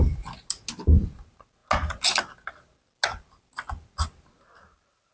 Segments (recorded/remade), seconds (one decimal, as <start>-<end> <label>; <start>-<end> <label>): 0.0-5.1 recorded